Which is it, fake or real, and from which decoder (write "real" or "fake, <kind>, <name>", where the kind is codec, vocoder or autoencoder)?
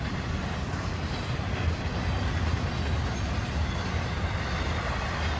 real